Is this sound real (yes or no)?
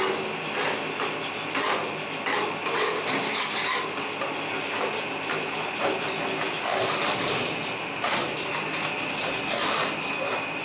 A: yes